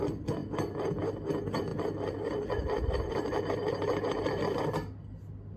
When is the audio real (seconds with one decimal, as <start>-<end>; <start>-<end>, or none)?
0.0-1.7; 3.4-5.6